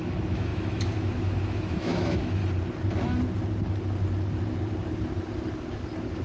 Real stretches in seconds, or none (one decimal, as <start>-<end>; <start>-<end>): 2.4-6.2